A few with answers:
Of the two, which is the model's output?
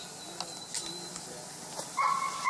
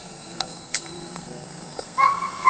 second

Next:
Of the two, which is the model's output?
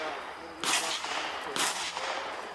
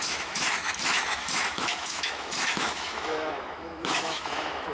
second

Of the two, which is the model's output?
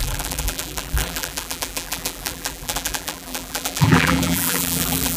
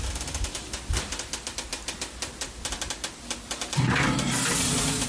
first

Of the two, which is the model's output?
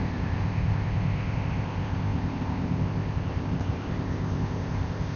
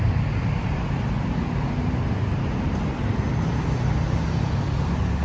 first